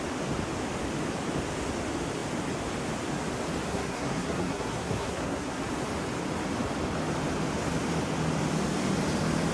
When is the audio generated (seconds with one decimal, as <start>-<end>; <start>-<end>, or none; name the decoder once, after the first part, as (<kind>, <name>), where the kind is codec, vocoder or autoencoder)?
3.7-5.6 (codec, SNAC)